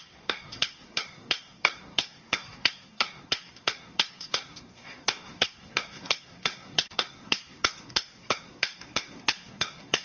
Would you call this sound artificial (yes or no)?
yes